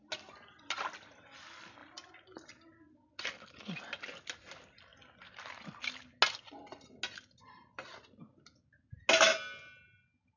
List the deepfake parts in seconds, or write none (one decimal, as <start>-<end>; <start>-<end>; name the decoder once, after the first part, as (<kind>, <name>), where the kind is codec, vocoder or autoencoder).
none